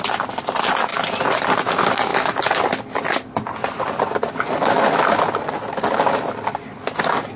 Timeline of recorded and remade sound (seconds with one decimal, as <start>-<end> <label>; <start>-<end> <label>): 0.0-7.4 recorded